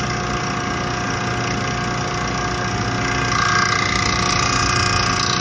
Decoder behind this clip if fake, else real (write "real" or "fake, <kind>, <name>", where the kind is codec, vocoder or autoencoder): real